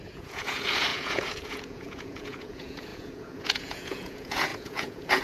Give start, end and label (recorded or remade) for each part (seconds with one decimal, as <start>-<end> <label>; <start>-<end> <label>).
0.0-5.2 remade